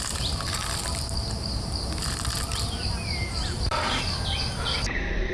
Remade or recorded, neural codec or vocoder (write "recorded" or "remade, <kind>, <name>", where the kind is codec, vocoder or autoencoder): recorded